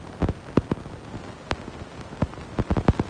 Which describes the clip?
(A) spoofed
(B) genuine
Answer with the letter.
B